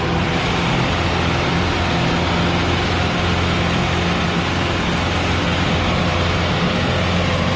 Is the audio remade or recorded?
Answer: recorded